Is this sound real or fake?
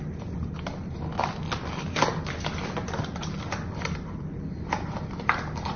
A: real